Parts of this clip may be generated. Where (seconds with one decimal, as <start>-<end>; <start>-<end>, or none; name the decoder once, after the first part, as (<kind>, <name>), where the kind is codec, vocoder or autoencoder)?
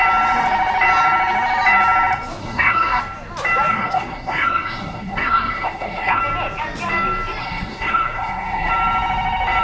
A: 2.4-3.0 (codec, SNAC); 3.7-6.2; 7.4-8.7